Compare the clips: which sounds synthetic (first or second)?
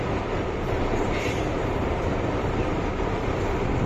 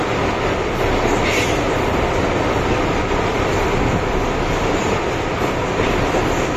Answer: first